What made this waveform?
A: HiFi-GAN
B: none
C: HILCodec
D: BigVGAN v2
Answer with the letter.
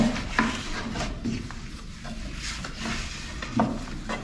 B